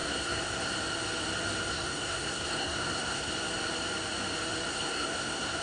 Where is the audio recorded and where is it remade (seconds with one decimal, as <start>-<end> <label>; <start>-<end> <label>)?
0.0-0.7 remade; 0.7-1.7 recorded; 1.7-3.3 remade; 3.3-4.7 recorded; 4.7-5.6 remade